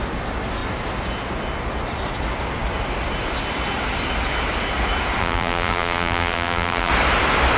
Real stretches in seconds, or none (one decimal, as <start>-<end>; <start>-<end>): 0.0-5.2; 6.9-7.6